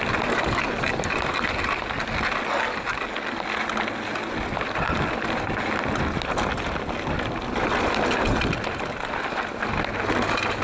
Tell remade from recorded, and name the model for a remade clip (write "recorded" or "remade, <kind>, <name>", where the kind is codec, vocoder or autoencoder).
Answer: recorded